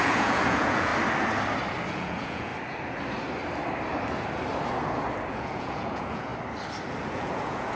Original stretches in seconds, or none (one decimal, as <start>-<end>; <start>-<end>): 0.9-1.9; 2.5-5.3; 6.3-7.1